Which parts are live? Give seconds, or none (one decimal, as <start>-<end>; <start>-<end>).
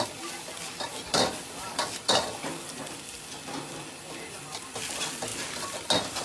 0.0-6.2